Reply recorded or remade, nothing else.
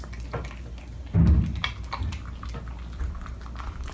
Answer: recorded